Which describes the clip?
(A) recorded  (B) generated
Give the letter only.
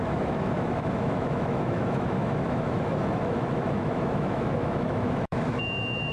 B